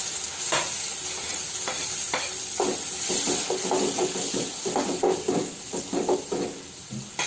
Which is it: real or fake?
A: real